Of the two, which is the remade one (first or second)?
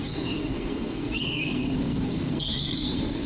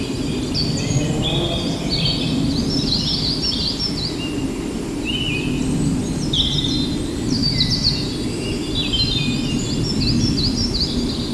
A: first